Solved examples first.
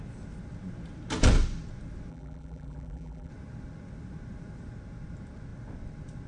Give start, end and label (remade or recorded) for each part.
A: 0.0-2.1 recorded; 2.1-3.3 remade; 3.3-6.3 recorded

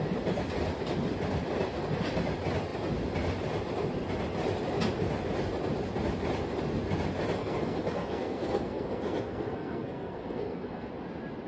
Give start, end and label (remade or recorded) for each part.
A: 0.0-7.4 recorded; 7.4-10.9 remade; 10.9-11.5 recorded

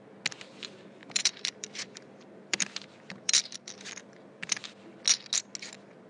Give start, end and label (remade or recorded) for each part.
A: 0.0-1.0 recorded; 1.0-4.7 remade; 4.7-6.1 recorded

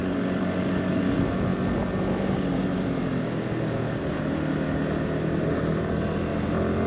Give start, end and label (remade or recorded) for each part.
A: 0.0-1.0 remade; 1.0-6.9 recorded

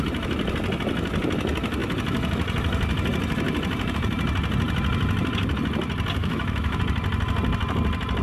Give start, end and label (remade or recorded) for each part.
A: 0.0-6.2 recorded; 6.2-6.8 remade; 6.8-8.2 recorded

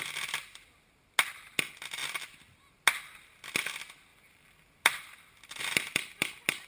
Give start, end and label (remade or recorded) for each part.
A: 0.0-4.1 recorded; 4.1-5.6 remade; 5.6-6.7 recorded